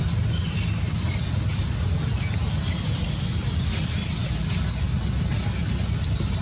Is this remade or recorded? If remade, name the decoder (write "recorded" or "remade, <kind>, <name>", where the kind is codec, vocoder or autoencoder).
recorded